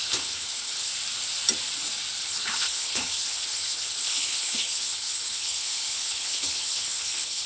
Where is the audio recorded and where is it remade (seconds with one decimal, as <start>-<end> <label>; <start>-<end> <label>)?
0.0-0.9 remade; 0.9-2.2 recorded; 2.2-7.5 remade